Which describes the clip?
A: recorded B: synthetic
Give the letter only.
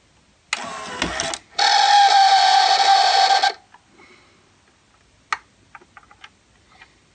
A